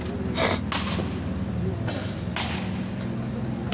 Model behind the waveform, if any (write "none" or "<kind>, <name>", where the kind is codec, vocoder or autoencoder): none